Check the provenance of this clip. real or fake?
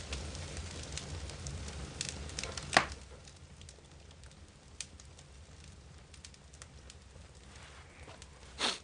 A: real